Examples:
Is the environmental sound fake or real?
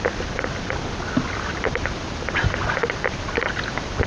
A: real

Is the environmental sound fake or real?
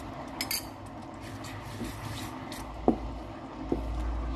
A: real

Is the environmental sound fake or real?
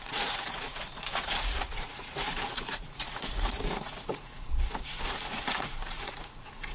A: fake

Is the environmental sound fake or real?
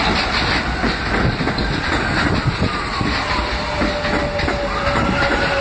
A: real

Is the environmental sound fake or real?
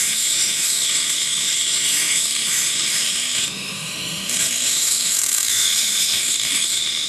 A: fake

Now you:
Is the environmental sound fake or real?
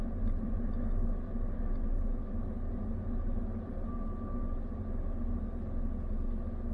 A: real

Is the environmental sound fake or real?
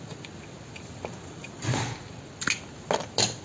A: real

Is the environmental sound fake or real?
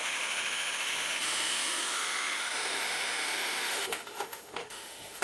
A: fake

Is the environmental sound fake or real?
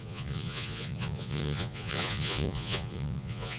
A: fake